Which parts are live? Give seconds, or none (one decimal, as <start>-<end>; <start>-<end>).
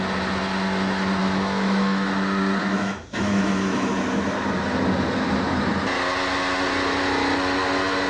0.0-1.2; 2.1-2.6; 3.9-8.1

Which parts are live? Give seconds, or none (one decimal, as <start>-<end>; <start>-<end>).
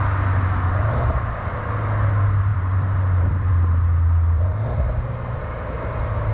0.0-2.5; 3.5-4.5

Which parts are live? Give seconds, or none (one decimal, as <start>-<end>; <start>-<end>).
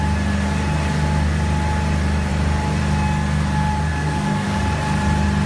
0.0-3.9; 4.6-5.5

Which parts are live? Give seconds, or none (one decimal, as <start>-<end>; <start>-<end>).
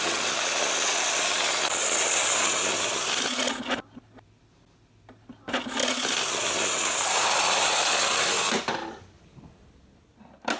0.0-10.6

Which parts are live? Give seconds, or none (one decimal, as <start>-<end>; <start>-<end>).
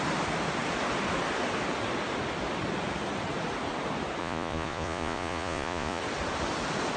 0.0-4.2; 6.0-7.0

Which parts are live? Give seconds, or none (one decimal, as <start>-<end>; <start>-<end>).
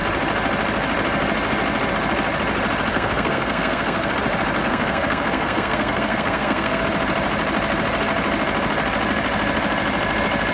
0.0-2.9; 4.1-4.6; 6.8-10.5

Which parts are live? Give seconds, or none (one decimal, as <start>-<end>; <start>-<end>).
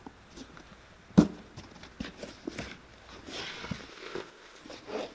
0.0-3.9; 4.6-5.1